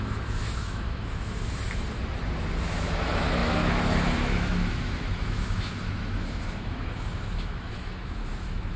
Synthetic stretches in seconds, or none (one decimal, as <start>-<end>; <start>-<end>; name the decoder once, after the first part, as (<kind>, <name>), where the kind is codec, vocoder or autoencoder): 0.0-1.6 (autoencoder, DAC-VAE); 2.6-8.8